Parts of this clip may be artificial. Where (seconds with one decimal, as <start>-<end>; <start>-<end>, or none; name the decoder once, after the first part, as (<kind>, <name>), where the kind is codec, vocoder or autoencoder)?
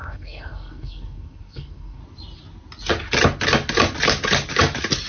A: 0.0-2.0 (codec, SNAC)